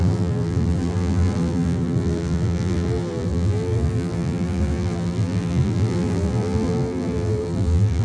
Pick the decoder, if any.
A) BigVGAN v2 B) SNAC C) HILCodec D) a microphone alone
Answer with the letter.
A